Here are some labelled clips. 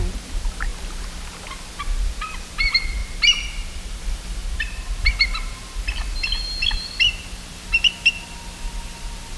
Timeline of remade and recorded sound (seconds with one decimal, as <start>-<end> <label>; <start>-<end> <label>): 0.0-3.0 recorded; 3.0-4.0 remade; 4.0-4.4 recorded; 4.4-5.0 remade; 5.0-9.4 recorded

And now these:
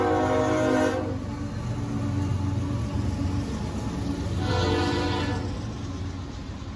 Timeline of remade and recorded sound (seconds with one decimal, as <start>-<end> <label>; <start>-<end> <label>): 0.0-6.8 recorded

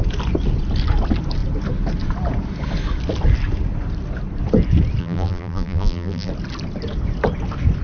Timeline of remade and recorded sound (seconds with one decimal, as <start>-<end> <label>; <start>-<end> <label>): 0.0-5.0 recorded; 5.0-6.3 remade; 6.3-7.8 recorded

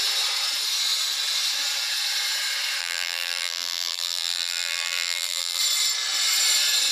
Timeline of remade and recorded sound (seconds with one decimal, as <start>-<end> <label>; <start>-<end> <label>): 0.0-2.8 recorded; 2.8-5.6 remade; 5.6-6.9 recorded

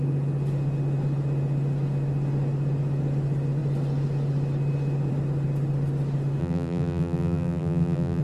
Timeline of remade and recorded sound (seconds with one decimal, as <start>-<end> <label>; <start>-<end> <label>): 0.0-6.4 recorded; 6.4-8.2 remade

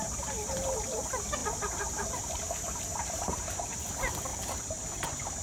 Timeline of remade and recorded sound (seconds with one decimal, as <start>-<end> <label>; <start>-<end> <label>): 0.0-2.9 recorded; 2.9-3.5 remade; 3.5-5.4 recorded

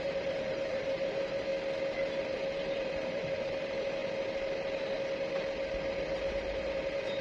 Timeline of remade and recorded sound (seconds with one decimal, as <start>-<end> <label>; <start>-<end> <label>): 0.0-1.5 remade; 1.5-2.2 recorded; 2.2-4.0 remade; 4.0-5.9 recorded; 5.9-7.2 remade